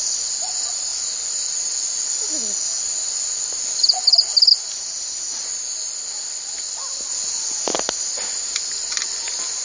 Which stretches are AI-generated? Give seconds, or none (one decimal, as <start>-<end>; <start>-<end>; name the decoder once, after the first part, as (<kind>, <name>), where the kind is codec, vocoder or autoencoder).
none